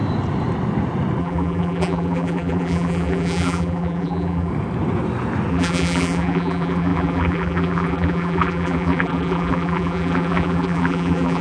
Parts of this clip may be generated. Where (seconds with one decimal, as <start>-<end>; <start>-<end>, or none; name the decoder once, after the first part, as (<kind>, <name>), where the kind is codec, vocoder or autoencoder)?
1.2-4.5 (vocoder, BigVGAN v2); 5.5-11.4